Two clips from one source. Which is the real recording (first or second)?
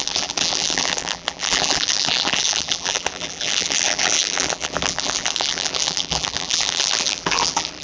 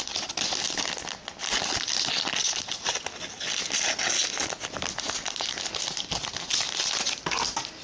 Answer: second